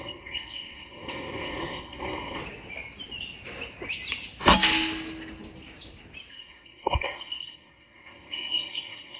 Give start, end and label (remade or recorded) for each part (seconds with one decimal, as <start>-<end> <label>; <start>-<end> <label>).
0.0-2.4 remade; 2.4-6.3 recorded; 6.3-9.2 remade